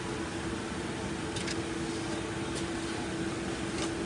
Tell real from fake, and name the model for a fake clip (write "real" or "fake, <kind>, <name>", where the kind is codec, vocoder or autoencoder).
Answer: real